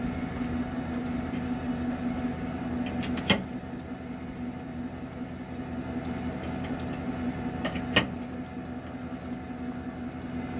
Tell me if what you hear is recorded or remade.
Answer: recorded